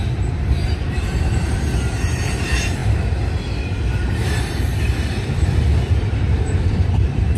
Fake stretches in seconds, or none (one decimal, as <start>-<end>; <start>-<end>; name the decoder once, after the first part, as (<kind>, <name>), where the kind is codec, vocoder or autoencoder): 0.0-7.4 (vocoder, BigVGAN v2)